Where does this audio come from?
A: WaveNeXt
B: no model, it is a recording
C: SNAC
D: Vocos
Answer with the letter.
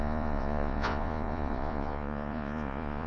D